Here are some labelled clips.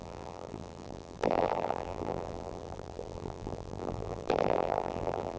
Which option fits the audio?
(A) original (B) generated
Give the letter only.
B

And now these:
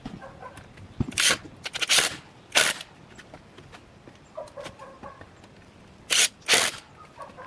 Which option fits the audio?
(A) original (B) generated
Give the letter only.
A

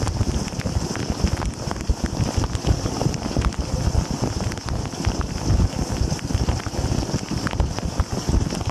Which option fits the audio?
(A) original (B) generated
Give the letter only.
A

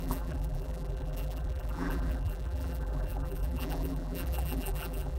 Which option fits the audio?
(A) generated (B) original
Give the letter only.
A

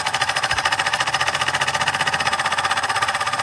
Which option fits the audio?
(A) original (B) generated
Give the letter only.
B